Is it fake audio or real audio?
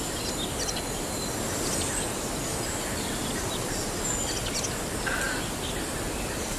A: real